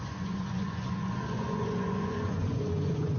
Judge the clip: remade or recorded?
remade